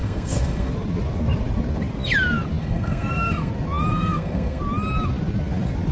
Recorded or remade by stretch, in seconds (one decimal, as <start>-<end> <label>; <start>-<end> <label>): 0.0-0.7 remade; 0.7-2.6 recorded; 2.6-3.5 remade; 3.5-3.9 recorded; 3.9-4.6 remade; 4.6-5.9 recorded